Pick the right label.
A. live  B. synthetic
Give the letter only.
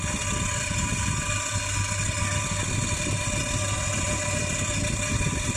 A